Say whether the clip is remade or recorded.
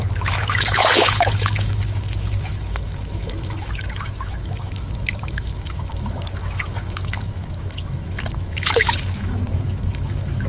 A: remade